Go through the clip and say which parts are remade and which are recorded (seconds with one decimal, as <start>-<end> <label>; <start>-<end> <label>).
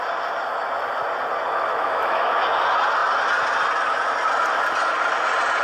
0.0-1.7 recorded; 1.7-2.4 remade; 2.4-5.6 recorded